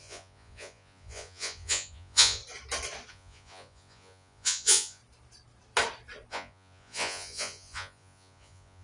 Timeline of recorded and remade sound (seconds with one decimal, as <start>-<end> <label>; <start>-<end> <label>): 0.0-2.4 remade; 2.4-3.1 recorded; 3.1-5.0 remade; 5.0-6.3 recorded; 6.3-8.8 remade